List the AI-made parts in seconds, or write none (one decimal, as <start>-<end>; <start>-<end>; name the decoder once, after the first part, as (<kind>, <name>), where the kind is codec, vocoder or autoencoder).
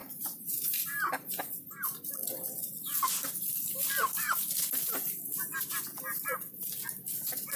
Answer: 0.0-2.0 (vocoder, BigVGAN v2)